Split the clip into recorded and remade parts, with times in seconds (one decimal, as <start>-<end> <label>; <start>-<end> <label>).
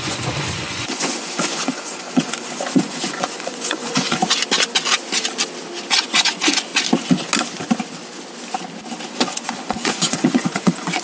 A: 0.0-4.2 remade; 4.2-5.9 recorded; 5.9-6.7 remade; 6.7-9.1 recorded; 9.1-11.0 remade